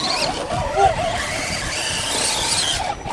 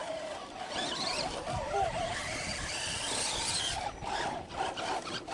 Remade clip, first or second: second